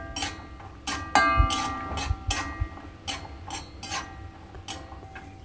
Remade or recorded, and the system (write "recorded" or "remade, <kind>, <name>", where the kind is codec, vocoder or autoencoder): recorded